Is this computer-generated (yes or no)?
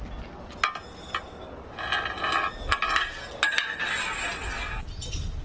no